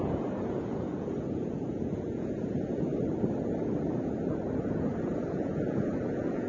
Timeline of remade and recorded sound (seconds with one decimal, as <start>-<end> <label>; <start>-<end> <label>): 0.0-2.9 remade; 2.9-4.5 recorded; 4.5-6.5 remade

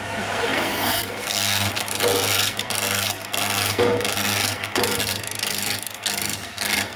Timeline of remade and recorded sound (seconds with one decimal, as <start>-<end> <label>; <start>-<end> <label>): 0.0-7.0 remade

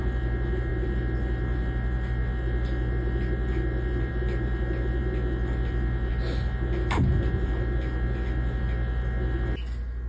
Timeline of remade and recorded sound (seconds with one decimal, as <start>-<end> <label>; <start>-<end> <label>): 0.0-10.1 recorded